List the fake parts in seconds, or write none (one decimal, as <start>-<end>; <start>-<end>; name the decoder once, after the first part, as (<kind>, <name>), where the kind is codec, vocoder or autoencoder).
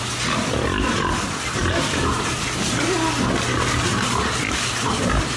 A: none